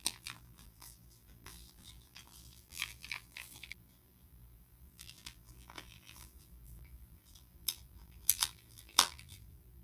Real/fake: fake